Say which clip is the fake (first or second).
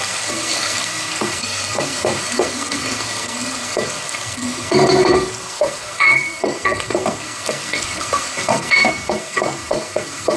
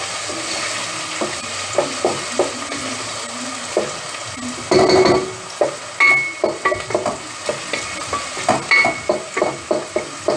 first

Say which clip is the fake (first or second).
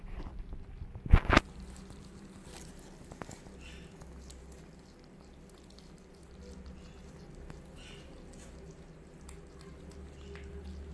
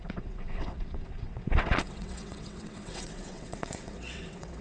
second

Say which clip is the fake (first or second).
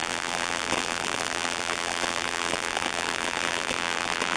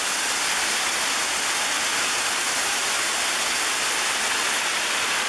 first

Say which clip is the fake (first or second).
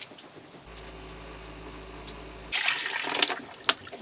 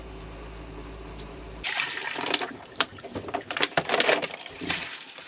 second